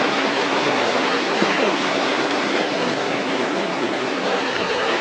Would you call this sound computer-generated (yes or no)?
yes